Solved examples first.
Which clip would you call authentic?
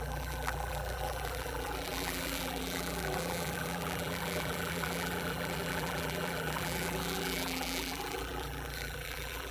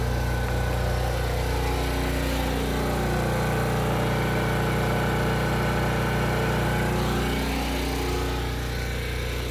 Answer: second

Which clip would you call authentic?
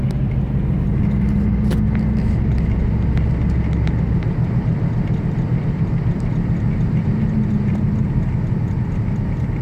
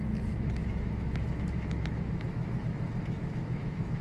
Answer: first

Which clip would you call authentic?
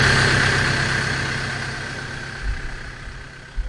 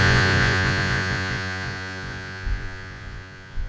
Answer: first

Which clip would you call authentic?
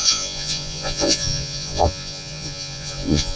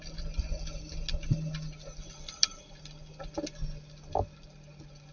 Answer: second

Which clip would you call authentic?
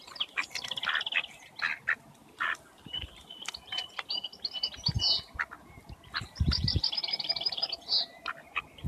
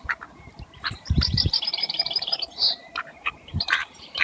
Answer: first